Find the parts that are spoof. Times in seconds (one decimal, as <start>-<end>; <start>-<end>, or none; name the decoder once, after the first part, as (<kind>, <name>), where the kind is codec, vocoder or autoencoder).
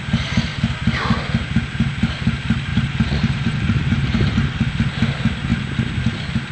2.7-4.7 (vocoder, BigVGAN v2)